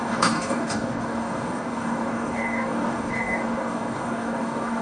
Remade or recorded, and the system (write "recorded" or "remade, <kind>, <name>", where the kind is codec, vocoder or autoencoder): remade, codec, DAC